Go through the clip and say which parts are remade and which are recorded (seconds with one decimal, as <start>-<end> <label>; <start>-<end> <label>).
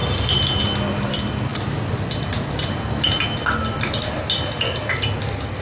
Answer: 0.0-0.6 remade; 0.6-5.6 recorded